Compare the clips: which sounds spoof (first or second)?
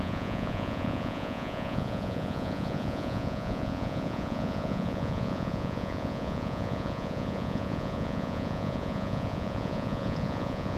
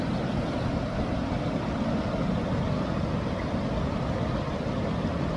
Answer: first